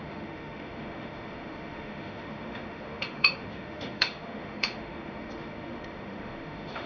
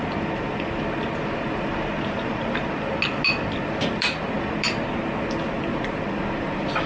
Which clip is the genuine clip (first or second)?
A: second